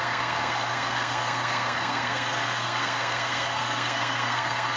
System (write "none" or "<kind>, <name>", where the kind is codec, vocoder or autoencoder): codec, SNAC